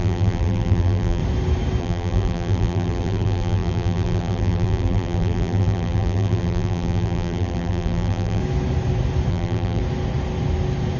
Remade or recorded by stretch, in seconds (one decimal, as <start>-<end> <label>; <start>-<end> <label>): 0.0-1.2 remade; 1.2-1.8 recorded; 1.8-8.4 remade; 8.4-9.3 recorded; 9.3-9.8 remade; 9.8-11.0 recorded